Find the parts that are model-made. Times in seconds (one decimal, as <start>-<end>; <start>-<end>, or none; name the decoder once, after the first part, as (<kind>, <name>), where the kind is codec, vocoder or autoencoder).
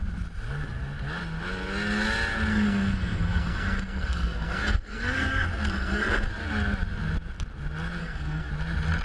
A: 2.5-6.3 (codec, SNAC); 8.0-8.5